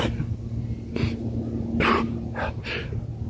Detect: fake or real real